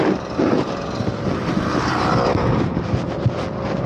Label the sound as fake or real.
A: real